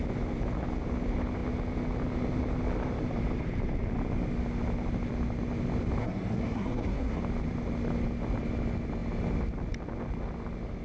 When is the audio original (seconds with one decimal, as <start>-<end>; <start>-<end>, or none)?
0.0-6.0; 7.2-10.8